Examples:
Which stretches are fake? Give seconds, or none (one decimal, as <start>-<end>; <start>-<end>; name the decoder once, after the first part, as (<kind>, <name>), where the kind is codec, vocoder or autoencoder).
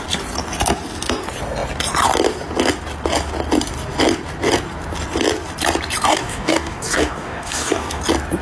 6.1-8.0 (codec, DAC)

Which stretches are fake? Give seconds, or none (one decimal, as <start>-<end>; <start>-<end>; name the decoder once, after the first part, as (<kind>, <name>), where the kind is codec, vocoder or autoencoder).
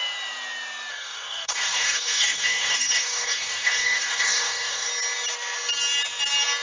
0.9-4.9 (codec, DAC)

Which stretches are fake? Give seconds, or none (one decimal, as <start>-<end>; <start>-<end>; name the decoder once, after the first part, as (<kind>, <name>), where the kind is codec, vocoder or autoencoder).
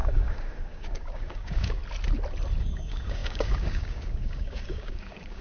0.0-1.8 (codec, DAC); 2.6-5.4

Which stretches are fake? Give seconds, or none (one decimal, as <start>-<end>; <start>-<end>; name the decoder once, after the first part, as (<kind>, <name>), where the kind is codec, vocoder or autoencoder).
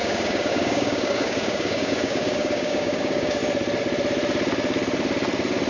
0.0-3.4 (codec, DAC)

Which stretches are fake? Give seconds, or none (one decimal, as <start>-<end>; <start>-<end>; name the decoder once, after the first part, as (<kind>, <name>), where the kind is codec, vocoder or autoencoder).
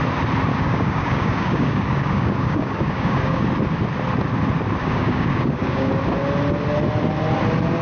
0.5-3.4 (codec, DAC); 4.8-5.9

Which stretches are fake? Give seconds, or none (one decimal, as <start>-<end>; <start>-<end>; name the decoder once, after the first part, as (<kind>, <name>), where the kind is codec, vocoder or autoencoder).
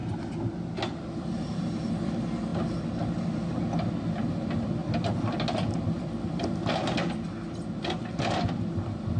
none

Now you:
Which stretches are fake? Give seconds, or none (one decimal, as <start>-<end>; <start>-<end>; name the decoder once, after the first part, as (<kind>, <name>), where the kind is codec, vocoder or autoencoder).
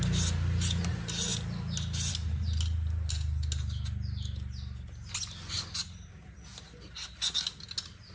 none